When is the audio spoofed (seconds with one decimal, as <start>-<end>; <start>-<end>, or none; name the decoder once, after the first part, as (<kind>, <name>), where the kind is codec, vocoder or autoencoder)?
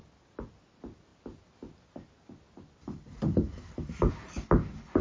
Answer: none